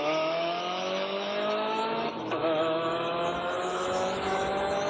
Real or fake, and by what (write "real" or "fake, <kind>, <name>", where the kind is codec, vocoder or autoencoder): fake, autoencoder, DAC-VAE